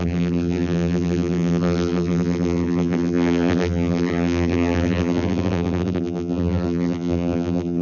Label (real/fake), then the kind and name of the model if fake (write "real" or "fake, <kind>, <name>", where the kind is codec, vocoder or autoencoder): fake, vocoder, BigVGAN v2